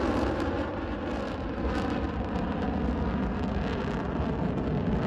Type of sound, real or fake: real